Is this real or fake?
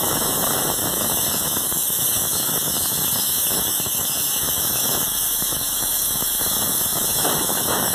fake